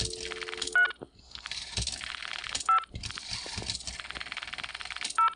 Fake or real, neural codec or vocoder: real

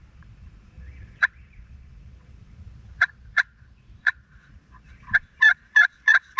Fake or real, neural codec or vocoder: fake, vocoder, Vocos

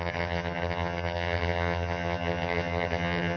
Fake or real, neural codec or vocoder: fake, vocoder, HiFi-GAN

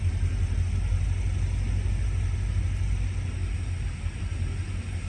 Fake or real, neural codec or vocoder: real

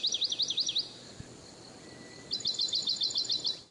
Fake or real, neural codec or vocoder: real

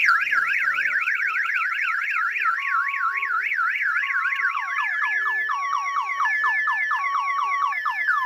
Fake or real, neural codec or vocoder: real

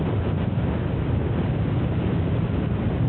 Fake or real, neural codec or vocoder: real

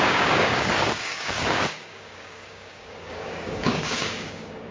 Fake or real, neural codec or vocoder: fake, codec, DAC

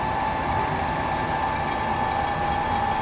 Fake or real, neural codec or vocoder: real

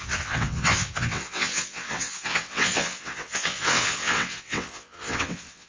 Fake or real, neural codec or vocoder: fake, vocoder, WaveNeXt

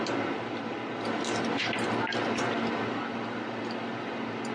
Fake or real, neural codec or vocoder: real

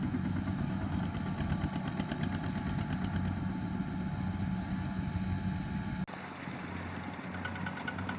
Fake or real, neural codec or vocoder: real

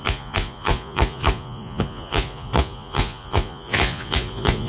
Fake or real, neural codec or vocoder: fake, vocoder, Vocos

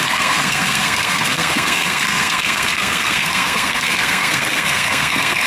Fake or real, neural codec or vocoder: fake, codec, SNAC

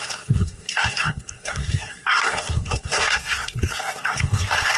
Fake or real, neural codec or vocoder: fake, codec, SNAC